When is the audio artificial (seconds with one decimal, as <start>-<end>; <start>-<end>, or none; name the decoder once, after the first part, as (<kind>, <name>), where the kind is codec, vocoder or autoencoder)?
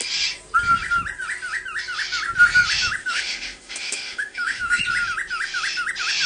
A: 3.0-4.8 (autoencoder, DAC-VAE)